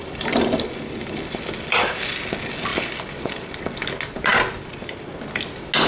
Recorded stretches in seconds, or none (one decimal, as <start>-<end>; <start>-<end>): 2.1-2.7; 3.6-5.9